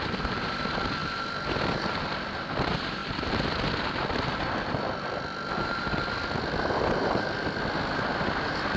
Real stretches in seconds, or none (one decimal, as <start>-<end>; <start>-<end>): 0.0-1.0; 2.1-3.0; 7.6-8.8